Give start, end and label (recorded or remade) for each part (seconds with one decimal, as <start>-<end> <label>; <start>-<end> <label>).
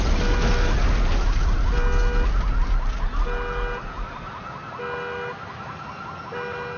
0.0-6.8 recorded